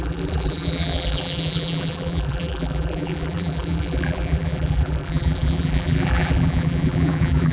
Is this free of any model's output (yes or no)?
no